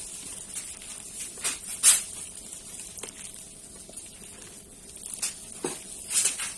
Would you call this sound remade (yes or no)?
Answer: no